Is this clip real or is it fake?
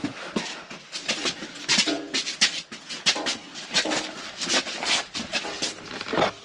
real